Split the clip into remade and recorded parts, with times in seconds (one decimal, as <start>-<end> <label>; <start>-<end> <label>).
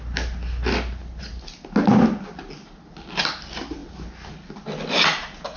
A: 0.0-5.6 recorded